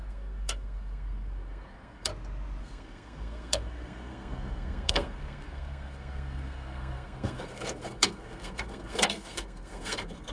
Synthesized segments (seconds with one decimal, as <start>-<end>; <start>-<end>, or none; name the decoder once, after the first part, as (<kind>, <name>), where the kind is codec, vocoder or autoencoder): 0.0-2.1 (codec, SNAC); 2.6-10.3